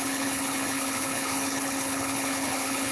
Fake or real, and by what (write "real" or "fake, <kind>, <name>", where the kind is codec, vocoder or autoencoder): fake, codec, HILCodec